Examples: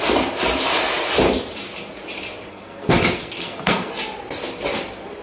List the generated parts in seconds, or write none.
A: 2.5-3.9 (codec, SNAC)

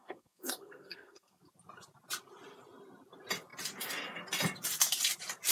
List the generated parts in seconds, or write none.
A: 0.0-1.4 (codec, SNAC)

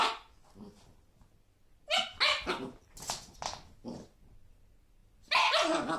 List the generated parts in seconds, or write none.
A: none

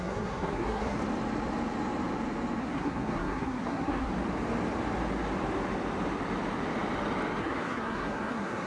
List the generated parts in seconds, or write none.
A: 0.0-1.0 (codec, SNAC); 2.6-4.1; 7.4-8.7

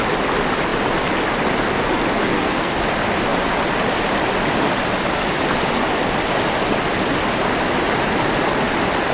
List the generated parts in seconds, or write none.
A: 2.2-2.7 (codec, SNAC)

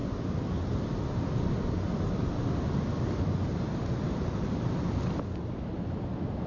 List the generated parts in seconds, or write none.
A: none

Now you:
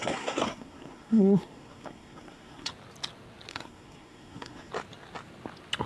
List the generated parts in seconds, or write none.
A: 0.0-2.7 (codec, SNAC); 3.5-4.7

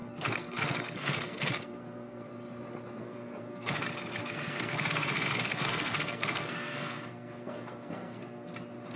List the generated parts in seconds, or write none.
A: 0.0-2.3 (codec, SNAC); 3.0-3.8; 4.2-8.5